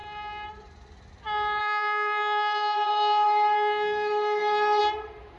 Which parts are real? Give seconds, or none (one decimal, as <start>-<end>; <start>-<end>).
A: 0.0-1.6; 4.8-5.4